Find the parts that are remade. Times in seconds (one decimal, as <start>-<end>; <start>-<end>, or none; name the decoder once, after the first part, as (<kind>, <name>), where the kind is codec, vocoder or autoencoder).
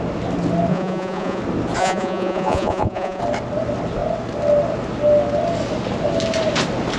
0.7-1.4 (vocoder, Vocos); 1.8-3.2